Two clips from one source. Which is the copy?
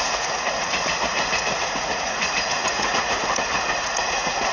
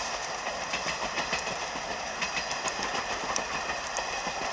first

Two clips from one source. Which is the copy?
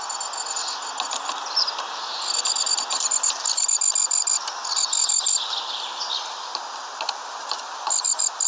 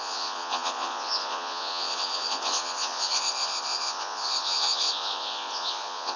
second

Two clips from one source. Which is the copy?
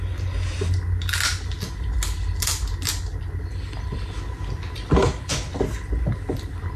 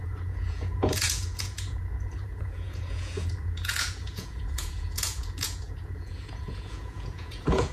second